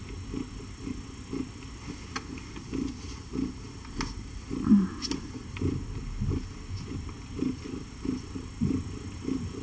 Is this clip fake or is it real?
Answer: real